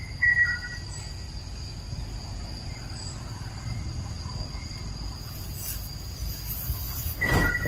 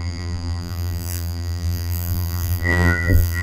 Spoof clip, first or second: second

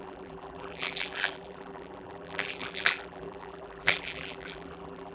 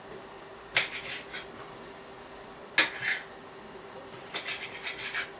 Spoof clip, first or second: first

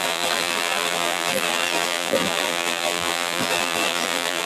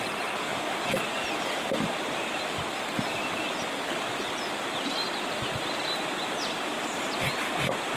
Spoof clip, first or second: first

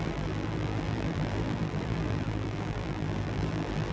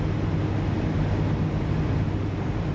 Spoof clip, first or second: first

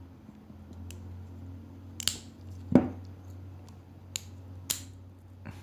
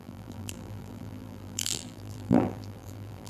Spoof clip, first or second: second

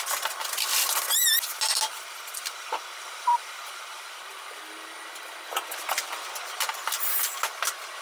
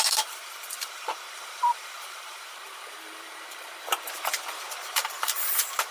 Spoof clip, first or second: second